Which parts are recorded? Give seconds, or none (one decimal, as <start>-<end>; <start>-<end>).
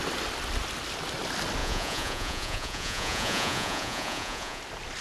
0.0-1.6; 4.6-5.0